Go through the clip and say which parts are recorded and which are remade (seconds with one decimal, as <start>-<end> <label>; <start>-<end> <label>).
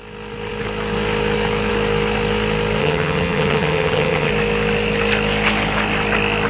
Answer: 0.0-2.8 recorded; 2.8-4.3 remade; 4.3-6.5 recorded